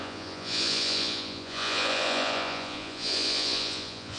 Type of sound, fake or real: fake